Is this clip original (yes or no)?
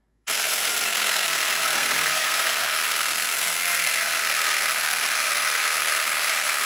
no